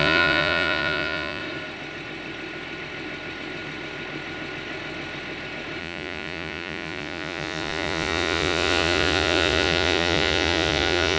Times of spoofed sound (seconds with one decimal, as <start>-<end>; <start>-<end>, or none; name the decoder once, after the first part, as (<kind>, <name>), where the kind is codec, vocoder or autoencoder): 0.0-1.4 (vocoder, Vocos); 5.8-11.2

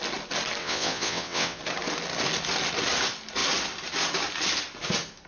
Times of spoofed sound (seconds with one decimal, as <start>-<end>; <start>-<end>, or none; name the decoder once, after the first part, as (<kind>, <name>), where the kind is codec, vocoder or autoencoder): 0.6-1.6 (vocoder, WaveNeXt)

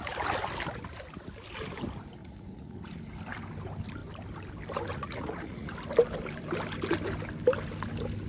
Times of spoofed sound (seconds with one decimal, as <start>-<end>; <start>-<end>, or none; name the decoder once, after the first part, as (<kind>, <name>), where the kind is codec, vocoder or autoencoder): 2.2-2.9 (vocoder, Vocos); 4.9-5.7

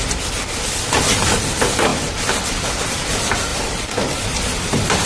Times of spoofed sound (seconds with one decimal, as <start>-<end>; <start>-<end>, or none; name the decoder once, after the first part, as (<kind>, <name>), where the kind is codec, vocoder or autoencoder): 3.5-5.1 (vocoder, BigVGAN v2)